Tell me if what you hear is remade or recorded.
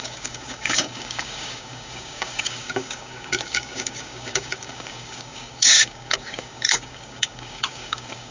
remade